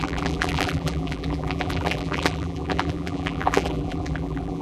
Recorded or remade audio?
remade